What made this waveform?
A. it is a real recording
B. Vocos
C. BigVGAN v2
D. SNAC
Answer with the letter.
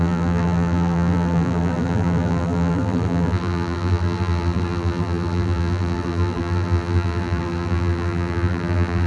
C